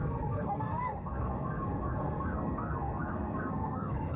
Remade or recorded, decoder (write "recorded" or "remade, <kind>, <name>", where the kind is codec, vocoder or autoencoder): remade, codec, SNAC